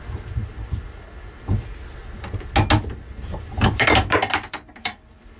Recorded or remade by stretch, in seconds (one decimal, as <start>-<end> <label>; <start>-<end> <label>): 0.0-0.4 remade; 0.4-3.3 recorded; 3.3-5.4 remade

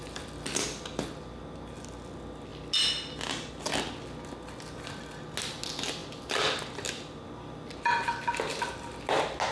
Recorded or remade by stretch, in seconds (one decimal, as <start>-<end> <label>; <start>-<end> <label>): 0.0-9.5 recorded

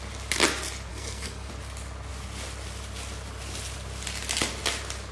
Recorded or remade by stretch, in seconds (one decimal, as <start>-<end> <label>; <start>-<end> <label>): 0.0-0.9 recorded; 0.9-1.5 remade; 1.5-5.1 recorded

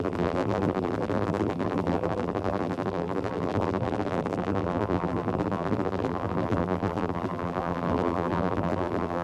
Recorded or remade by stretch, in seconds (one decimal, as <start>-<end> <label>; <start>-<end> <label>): 0.0-9.2 remade

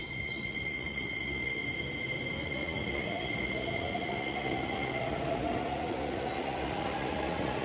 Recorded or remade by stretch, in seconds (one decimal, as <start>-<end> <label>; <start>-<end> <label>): 0.0-1.6 remade; 1.6-2.4 recorded; 2.4-7.6 remade